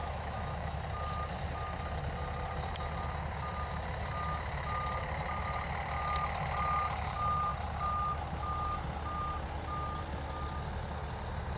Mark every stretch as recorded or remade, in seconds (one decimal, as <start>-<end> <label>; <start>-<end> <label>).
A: 0.0-0.8 remade; 0.8-11.6 recorded